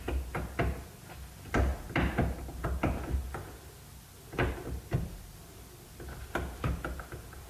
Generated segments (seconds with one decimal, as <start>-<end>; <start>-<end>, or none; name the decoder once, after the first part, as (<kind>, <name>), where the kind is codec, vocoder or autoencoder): none